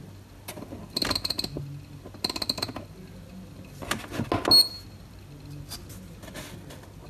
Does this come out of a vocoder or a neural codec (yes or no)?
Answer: no